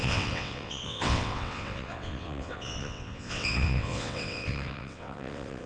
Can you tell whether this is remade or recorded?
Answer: remade